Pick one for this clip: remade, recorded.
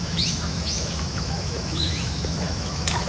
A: remade